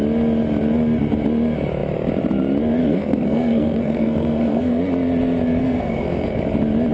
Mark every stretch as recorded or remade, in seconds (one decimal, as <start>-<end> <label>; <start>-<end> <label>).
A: 0.0-2.8 recorded; 2.8-4.8 remade; 4.8-5.6 recorded; 5.6-6.4 remade; 6.4-6.9 recorded